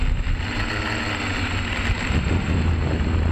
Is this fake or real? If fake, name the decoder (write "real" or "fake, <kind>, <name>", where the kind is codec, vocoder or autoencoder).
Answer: real